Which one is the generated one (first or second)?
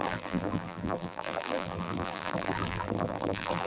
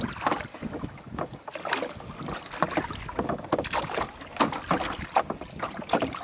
first